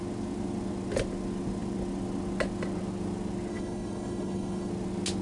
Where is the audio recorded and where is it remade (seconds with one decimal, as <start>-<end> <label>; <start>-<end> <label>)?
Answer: 0.0-3.5 recorded; 3.5-4.7 remade; 4.7-5.2 recorded